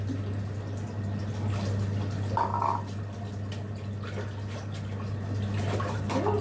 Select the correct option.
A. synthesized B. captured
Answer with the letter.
B